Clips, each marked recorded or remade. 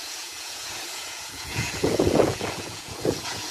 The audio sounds remade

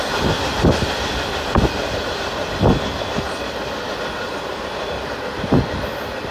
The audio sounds recorded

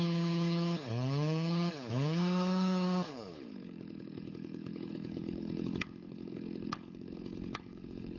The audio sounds remade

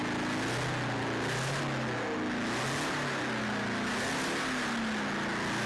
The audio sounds recorded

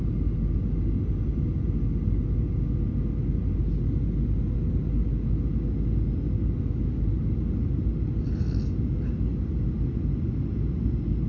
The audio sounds recorded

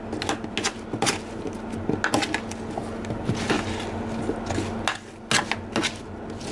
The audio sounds recorded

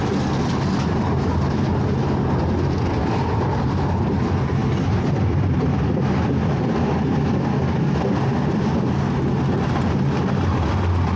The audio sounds recorded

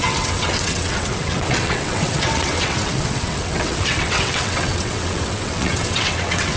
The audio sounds remade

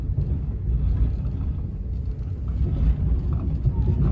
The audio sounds recorded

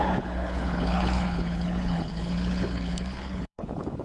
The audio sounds remade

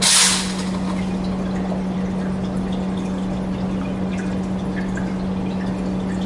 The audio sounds recorded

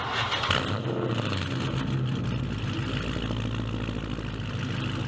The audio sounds recorded